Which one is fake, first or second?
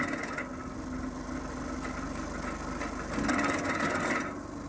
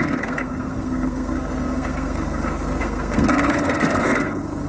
second